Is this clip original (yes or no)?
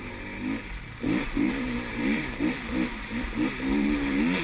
no